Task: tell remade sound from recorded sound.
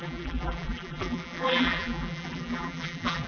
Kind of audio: remade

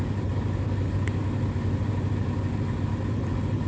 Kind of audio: recorded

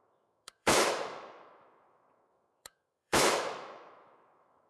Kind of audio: remade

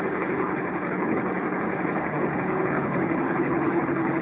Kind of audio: remade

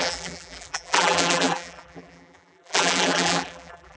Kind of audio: remade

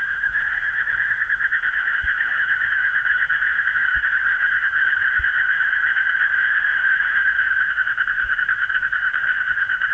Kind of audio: remade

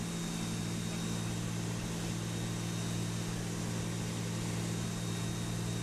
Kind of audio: recorded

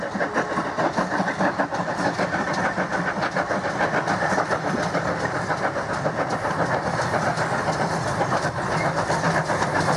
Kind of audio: recorded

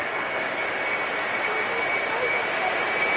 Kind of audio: recorded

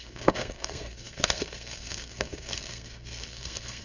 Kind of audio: remade